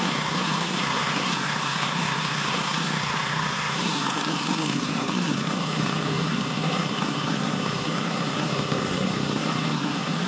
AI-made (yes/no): yes